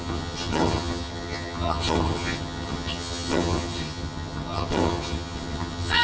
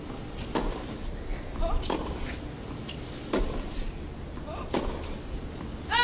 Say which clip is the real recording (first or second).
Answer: second